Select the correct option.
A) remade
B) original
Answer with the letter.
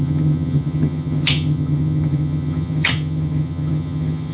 A